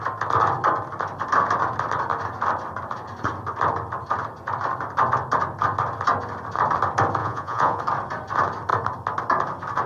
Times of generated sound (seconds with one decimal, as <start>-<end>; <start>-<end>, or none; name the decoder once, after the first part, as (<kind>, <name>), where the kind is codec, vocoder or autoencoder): 7.2-7.8 (vocoder, Vocos)